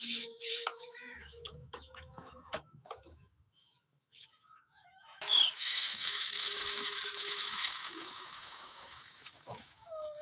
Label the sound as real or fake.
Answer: fake